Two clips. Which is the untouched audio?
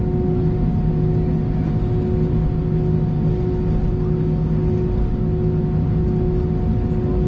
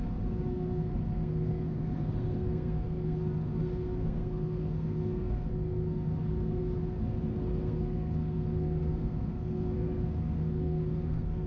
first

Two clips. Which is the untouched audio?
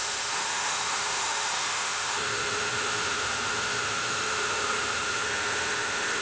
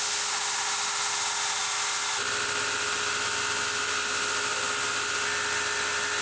second